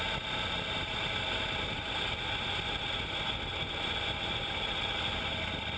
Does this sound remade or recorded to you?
recorded